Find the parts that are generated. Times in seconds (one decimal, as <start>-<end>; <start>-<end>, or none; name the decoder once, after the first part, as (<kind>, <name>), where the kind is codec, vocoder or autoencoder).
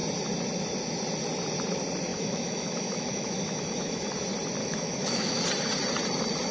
2.1-4.1 (autoencoder, DAC-VAE); 4.6-5.4